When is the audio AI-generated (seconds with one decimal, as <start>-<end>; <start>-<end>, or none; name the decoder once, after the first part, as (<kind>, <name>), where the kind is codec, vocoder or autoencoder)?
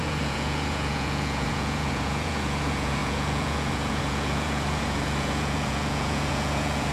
0.0-6.9 (vocoder, Vocos)